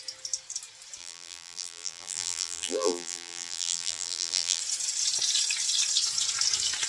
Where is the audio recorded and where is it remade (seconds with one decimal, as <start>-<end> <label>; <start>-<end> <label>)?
0.0-1.0 recorded; 1.0-4.6 remade; 4.6-6.9 recorded